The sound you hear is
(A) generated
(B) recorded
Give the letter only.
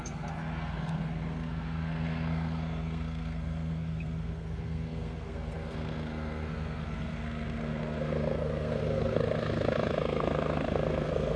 A